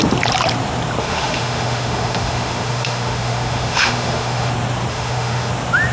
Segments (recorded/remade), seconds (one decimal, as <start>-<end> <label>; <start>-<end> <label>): 0.0-1.0 recorded; 1.0-4.5 remade; 4.5-4.9 recorded; 4.9-5.5 remade; 5.5-5.9 recorded